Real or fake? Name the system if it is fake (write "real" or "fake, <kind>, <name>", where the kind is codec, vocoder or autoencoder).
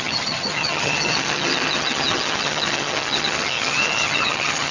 fake, vocoder, HiFi-GAN